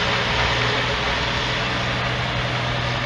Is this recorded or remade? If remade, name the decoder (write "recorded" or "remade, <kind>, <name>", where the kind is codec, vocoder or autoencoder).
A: recorded